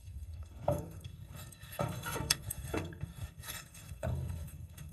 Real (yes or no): no